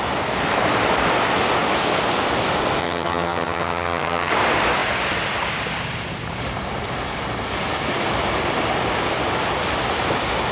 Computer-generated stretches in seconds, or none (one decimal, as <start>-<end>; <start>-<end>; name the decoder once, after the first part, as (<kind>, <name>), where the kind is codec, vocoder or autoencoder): 2.8-4.3 (vocoder, HiFi-GAN)